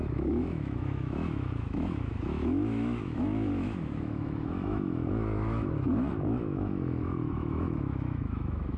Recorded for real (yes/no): no